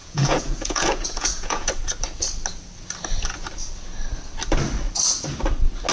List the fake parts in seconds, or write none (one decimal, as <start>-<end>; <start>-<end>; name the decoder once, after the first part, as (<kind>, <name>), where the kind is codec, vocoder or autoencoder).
0.0-1.7 (vocoder, Vocos)